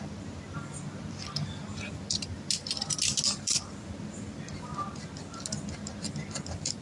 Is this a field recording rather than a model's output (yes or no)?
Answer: yes